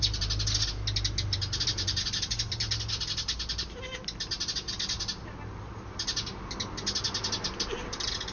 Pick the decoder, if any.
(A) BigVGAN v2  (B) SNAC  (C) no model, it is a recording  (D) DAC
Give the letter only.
C